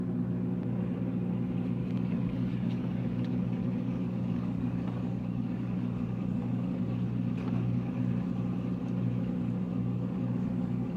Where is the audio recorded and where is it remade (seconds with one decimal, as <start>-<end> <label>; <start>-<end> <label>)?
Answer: 0.0-1.8 recorded; 1.8-6.8 remade; 6.8-9.7 recorded; 9.7-11.0 remade